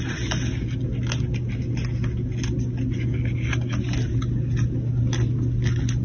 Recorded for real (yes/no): yes